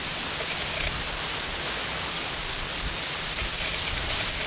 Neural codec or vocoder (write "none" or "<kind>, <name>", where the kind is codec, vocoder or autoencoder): none